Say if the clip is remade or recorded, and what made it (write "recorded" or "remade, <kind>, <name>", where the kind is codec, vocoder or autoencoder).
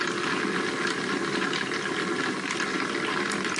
recorded